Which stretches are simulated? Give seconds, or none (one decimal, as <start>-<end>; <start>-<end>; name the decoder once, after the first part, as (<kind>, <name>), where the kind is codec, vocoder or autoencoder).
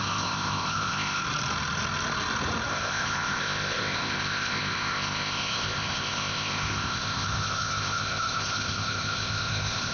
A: 0.0-1.2 (codec, ZipCodec); 2.7-9.9